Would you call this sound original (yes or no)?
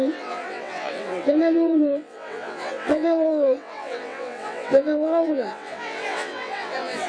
no